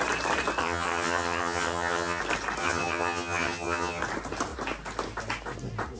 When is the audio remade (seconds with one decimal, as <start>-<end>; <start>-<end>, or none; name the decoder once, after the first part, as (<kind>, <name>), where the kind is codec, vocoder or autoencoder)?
0.6-2.2 (vocoder, HiFi-GAN); 2.6-4.0

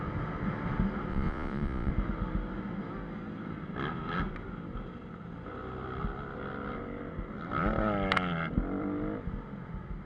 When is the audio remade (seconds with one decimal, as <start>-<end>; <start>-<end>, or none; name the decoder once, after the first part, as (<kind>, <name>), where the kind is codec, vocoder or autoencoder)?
1.1-1.9 (vocoder, Vocos)

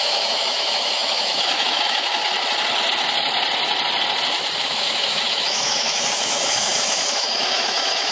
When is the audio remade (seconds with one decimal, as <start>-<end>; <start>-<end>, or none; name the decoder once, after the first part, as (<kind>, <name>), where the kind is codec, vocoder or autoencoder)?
0.0-2.2 (autoencoder, DAC-VAE); 4.6-8.1

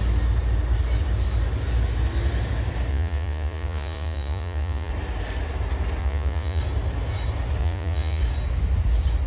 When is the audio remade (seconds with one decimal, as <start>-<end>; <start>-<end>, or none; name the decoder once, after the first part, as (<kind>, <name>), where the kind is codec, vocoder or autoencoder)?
2.9-4.9 (vocoder, Vocos); 6.0-6.6; 7.6-8.2

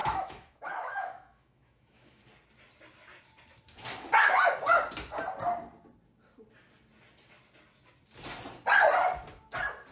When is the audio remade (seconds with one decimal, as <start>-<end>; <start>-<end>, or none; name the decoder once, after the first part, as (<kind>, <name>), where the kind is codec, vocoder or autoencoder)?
0.0-2.2 (autoencoder, DAC-VAE)

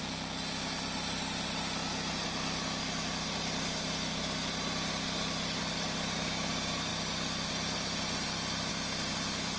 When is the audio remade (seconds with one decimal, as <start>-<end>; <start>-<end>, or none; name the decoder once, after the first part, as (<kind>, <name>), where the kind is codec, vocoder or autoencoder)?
none